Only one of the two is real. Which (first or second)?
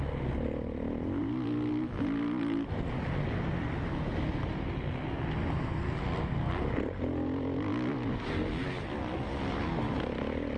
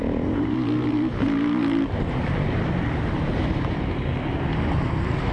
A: first